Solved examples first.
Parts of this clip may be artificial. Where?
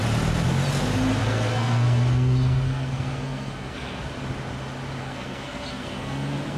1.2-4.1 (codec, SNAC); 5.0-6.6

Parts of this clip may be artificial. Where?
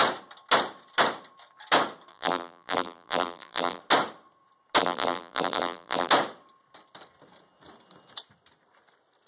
2.1-3.8 (vocoder, BigVGAN v2); 4.8-6.1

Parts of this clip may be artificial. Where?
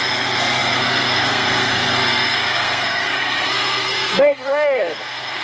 0.0-5.4 (codec, SNAC)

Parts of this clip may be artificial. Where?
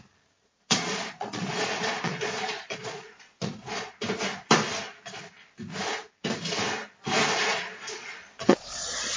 0.4-4.0 (vocoder, Vocos); 7.5-9.2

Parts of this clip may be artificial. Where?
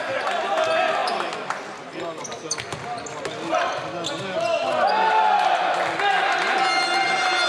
none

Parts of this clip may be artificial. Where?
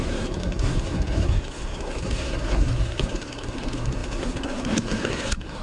0.0-5.6 (codec, SNAC)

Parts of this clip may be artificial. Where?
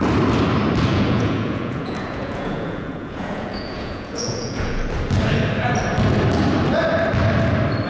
0.9-4.8 (vocoder, Vocos)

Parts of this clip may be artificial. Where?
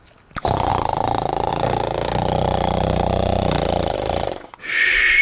0.7-1.5 (vocoder, BigVGAN v2)